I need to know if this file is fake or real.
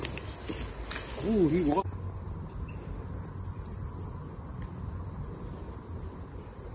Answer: real